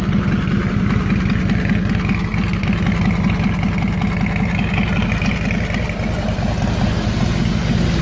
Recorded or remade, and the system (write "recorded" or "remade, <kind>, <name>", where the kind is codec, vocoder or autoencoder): recorded